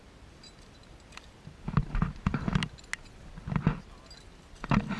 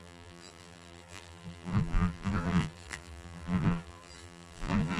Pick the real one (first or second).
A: first